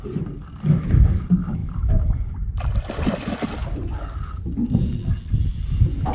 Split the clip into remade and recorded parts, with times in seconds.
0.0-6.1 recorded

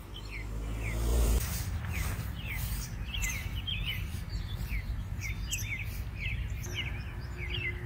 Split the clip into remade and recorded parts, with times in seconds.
0.0-1.1 recorded; 1.1-5.3 remade; 5.3-7.9 recorded

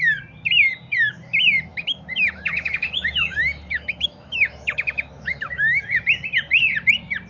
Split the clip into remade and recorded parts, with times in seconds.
0.0-1.7 recorded; 1.7-6.0 remade; 6.0-7.3 recorded

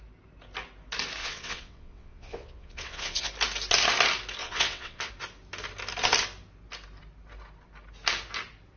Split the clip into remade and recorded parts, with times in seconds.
0.0-1.2 recorded; 1.2-3.3 remade; 3.3-4.4 recorded; 4.4-5.1 remade; 5.1-8.8 recorded